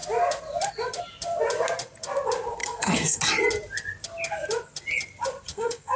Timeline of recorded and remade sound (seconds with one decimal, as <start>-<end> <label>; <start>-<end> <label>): 0.0-2.6 recorded; 2.6-3.2 remade; 3.2-5.5 recorded; 5.5-6.0 remade